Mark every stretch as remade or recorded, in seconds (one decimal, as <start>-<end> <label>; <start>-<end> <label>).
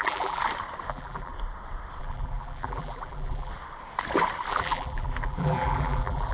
0.0-0.4 remade; 0.4-0.9 recorded; 0.9-1.3 remade; 1.3-2.0 recorded; 2.0-3.5 remade; 3.5-4.5 recorded; 4.5-6.3 remade